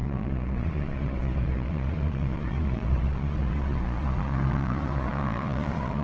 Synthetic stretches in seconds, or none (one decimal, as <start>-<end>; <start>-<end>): 0.0-6.0